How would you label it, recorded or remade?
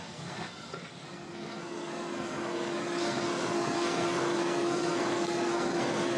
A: remade